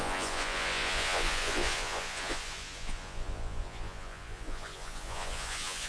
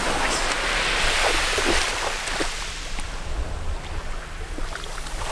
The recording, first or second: second